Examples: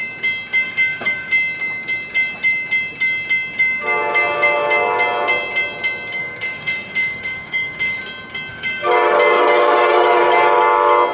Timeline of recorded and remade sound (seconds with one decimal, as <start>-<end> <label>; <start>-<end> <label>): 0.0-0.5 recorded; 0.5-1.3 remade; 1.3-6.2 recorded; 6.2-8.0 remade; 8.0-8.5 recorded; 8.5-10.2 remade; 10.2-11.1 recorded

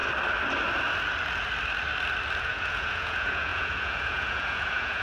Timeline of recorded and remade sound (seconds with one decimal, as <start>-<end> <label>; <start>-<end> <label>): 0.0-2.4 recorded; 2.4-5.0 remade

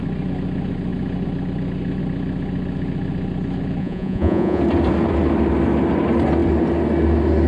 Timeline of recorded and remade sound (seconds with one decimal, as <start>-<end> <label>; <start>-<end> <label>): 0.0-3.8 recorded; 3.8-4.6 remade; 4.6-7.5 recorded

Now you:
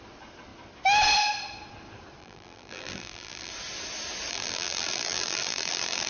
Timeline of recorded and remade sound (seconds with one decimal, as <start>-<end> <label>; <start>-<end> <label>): 0.0-2.2 recorded; 2.2-3.5 remade; 3.5-4.3 recorded; 4.3-6.1 remade

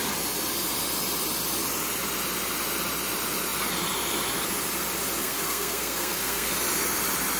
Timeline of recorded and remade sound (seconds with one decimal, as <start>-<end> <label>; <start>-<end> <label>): 0.0-5.2 recorded; 5.2-6.5 remade; 6.5-7.4 recorded

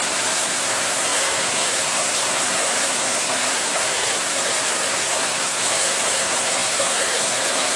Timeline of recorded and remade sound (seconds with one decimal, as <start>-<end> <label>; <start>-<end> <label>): 0.0-7.8 remade